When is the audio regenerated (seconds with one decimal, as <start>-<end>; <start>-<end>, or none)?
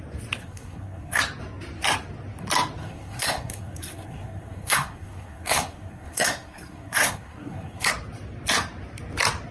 0.4-1.2; 2.8-7.9